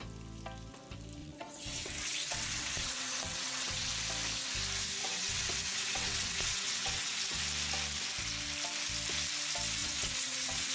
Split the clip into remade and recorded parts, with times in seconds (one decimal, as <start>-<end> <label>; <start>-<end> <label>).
0.0-1.2 recorded; 1.2-3.9 remade; 3.9-5.0 recorded; 5.0-7.4 remade; 7.4-9.8 recorded; 9.8-10.7 remade